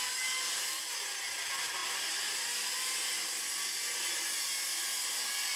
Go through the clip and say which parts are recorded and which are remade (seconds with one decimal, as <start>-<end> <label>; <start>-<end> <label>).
0.0-5.6 recorded